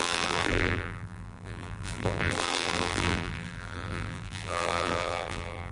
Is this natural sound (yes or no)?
no